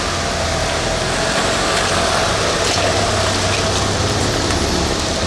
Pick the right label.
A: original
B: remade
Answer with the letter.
A